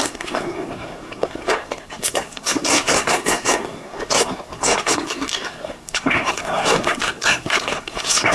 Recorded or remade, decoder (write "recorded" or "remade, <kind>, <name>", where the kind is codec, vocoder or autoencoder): remade, codec, SNAC